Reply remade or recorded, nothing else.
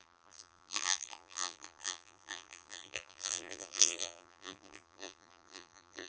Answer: remade